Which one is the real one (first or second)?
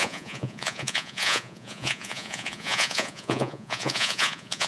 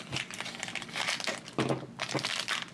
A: second